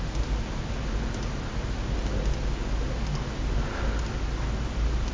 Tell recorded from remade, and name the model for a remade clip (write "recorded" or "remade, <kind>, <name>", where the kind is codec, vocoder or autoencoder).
recorded